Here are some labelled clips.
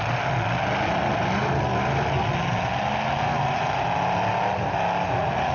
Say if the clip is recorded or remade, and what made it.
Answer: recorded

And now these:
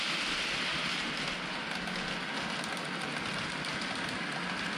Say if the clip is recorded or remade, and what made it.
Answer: recorded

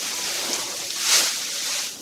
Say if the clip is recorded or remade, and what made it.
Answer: recorded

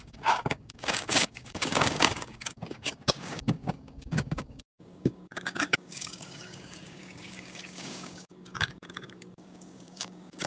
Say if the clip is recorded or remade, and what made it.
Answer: remade, codec, DAC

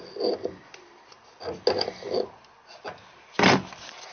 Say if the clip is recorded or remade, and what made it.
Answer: recorded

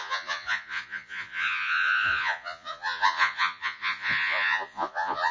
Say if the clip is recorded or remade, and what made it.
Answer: remade, vocoder, Vocos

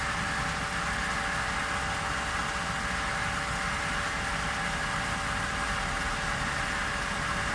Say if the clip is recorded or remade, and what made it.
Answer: recorded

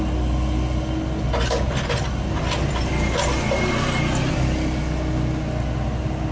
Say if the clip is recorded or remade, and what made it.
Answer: recorded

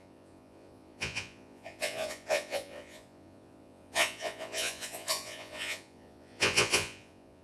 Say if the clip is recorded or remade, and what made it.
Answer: remade, vocoder, Vocos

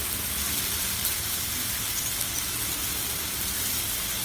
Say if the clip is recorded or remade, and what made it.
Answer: remade, vocoder, BigVGAN v2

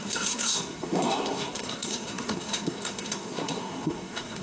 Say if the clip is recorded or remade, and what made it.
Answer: remade, codec, SNAC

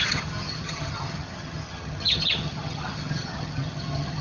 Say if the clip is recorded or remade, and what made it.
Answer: remade, vocoder, HiFi-GAN